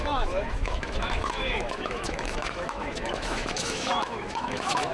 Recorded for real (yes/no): no